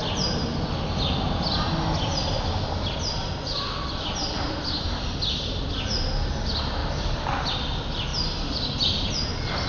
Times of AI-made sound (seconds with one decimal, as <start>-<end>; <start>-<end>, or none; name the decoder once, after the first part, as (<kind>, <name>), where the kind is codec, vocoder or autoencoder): 6.8-7.5 (vocoder, BigVGAN v2)